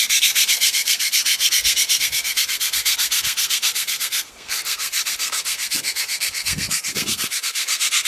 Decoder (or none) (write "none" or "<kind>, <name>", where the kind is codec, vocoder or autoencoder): codec, SNAC